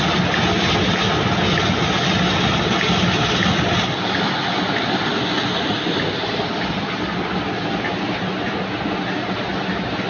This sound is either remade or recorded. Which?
recorded